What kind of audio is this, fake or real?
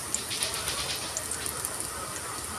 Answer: real